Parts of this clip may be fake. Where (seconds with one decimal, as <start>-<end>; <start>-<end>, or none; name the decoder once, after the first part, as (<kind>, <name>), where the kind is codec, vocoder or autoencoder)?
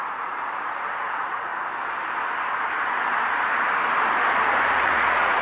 0.0-1.5 (vocoder, Vocos); 4.7-5.4